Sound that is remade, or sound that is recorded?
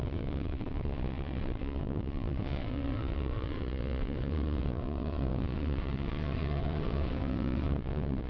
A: remade